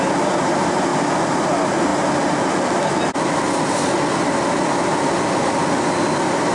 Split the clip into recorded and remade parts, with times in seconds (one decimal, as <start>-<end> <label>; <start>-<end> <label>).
0.0-6.5 recorded